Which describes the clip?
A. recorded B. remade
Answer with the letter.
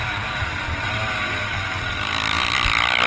A